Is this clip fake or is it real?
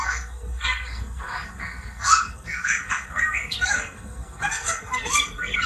fake